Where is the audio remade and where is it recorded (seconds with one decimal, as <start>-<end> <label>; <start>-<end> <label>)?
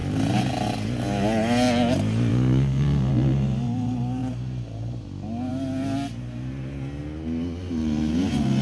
0.0-2.3 recorded; 2.3-3.1 remade; 3.1-8.6 recorded